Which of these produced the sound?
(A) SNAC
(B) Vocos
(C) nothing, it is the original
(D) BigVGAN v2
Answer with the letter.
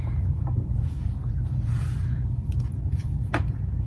B